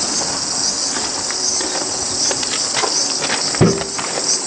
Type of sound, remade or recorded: recorded